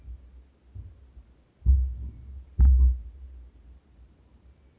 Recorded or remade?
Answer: recorded